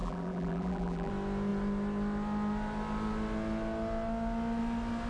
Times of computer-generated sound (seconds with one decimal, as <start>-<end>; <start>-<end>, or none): 0.0-1.1